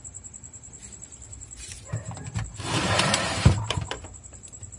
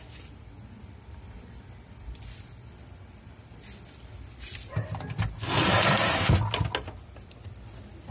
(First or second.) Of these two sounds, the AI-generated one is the first